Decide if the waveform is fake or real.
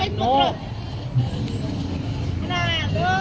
real